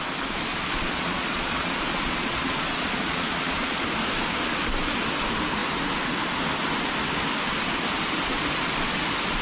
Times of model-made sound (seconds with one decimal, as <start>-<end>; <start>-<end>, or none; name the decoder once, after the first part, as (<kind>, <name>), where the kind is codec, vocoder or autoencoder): 0.5-3.8 (vocoder, Vocos)